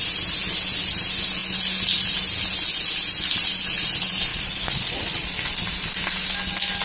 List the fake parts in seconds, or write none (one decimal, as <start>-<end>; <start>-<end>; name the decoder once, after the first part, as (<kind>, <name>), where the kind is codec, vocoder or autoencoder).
4.3-5.3 (vocoder, Vocos)